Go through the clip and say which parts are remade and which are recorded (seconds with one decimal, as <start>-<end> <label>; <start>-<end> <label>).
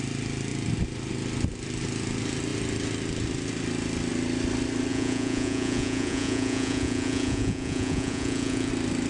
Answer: 0.0-4.9 recorded; 4.9-8.7 remade; 8.7-9.1 recorded